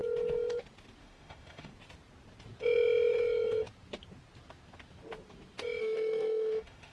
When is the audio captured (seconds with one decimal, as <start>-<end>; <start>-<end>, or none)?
0.0-1.0; 1.7-5.8